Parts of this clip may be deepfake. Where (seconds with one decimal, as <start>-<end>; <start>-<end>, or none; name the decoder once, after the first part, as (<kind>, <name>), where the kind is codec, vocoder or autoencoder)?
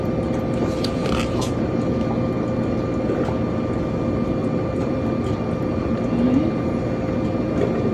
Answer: 1.0-2.0 (vocoder, BigVGAN v2); 4.4-6.0